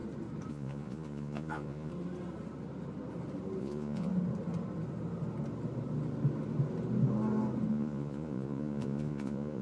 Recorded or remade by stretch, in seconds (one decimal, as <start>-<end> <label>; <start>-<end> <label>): 0.0-0.5 recorded; 0.5-1.9 remade; 1.9-3.6 recorded; 3.6-4.1 remade; 4.1-7.7 recorded; 7.7-9.6 remade